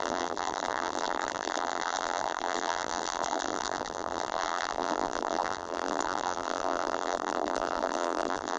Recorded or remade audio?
remade